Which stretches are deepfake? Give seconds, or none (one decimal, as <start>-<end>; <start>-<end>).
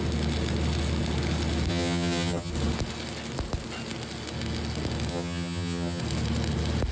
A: 1.7-2.5; 5.1-6.0